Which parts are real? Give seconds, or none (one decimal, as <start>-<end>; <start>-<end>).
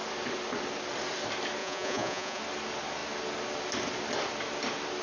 0.0-1.6; 2.4-5.0